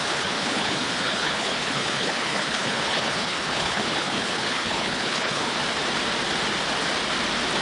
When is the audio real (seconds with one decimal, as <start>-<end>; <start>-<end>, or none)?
5.6-7.6

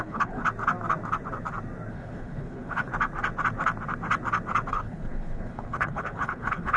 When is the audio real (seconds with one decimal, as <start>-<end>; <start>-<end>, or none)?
0.4-1.9; 2.9-4.7

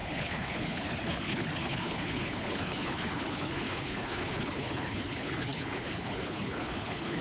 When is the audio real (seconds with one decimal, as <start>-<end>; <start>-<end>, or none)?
none

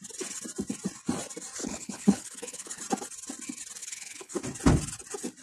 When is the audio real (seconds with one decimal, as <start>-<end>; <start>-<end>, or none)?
0.0-1.6; 2.8-3.8; 4.4-5.4